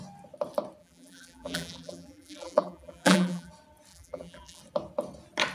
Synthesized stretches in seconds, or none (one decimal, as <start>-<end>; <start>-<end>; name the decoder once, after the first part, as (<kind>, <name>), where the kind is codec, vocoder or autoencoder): 0.8-3.5 (vocoder, BigVGAN v2); 3.9-4.6